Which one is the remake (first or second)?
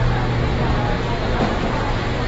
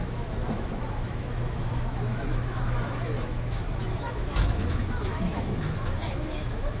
second